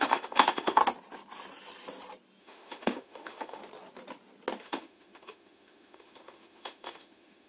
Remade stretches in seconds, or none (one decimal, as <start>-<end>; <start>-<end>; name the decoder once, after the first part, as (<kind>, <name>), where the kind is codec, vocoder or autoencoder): 0.0-0.8 (autoencoder, DAC-VAE); 2.4-3.6; 4.6-7.5